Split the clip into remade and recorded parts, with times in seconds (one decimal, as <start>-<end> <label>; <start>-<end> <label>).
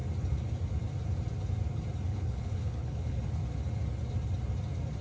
0.0-2.1 recorded; 2.1-3.2 remade; 3.2-5.0 recorded